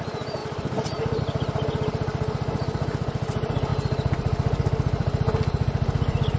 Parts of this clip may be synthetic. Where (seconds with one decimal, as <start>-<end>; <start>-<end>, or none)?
none

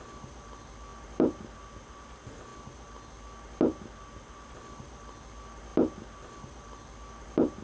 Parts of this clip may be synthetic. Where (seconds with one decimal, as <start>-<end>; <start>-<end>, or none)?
0.0-2.5; 4.0-5.7; 6.4-7.6

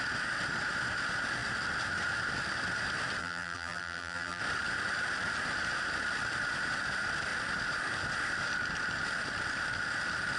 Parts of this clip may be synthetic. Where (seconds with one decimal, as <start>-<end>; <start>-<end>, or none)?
3.2-4.4

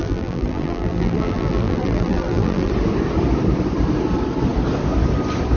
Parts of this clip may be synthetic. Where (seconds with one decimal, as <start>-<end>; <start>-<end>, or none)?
0.0-2.7

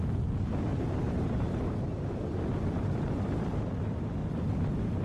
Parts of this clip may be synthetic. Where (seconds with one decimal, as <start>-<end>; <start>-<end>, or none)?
0.7-2.4

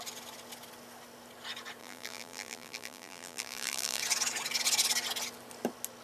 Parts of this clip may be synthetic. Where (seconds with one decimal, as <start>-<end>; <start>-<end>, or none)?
1.8-4.0

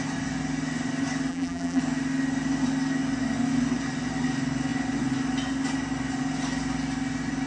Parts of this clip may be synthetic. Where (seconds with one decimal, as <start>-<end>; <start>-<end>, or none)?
1.3-1.8